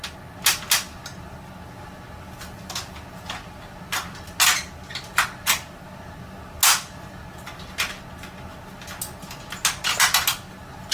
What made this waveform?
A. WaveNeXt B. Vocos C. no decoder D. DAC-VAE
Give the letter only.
C